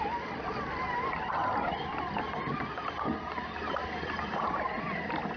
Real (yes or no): yes